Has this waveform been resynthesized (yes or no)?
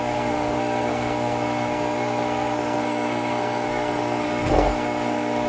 yes